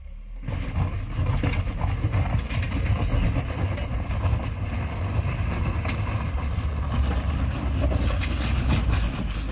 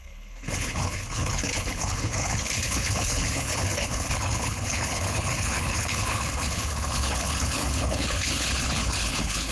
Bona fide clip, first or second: first